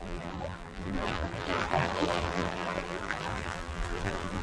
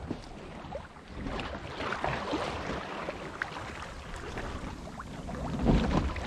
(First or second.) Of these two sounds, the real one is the second